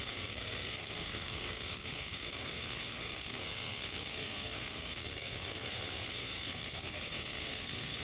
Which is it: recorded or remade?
remade